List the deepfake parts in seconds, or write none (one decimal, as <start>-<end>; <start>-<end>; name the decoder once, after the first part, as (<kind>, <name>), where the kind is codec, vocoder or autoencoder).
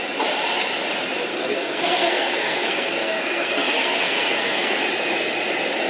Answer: 1.3-4.8 (codec, SNAC)